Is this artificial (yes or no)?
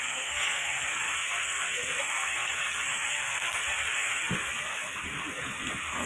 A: yes